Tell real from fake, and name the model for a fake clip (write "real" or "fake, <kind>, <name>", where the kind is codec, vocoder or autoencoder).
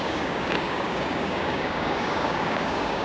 fake, codec, DAC